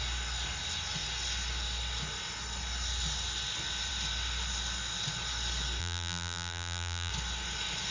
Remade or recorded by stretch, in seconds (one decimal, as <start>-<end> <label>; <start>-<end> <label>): 0.0-5.8 recorded; 5.8-7.1 remade; 7.1-7.9 recorded